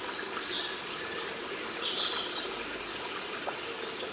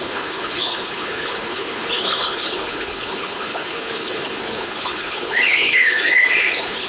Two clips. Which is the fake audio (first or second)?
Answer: second